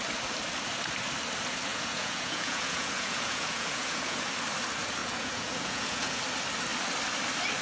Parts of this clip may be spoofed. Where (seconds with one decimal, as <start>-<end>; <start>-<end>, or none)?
1.7-4.3; 5.0-6.2